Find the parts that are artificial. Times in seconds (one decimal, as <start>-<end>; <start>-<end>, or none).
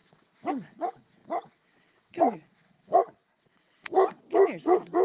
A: 0.0-5.0